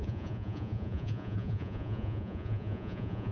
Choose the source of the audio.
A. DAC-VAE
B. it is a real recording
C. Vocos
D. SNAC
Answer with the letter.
C